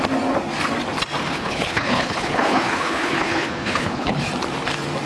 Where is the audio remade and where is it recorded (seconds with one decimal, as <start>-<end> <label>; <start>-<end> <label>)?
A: 0.0-1.2 recorded; 1.2-4.3 remade; 4.3-5.1 recorded